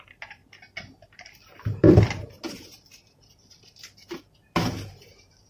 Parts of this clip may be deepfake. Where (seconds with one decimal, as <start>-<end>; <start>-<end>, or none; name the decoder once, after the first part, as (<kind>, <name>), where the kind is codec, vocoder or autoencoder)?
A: 0.0-0.4 (vocoder, BigVGAN v2); 3.6-5.5